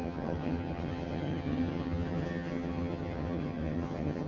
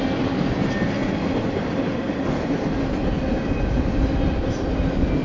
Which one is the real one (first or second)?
second